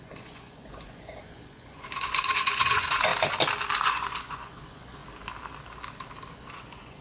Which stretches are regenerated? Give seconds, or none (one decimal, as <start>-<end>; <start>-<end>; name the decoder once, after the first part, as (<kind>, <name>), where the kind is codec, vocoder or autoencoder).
0.0-3.1 (vocoder, Vocos); 3.8-5.0; 6.3-7.0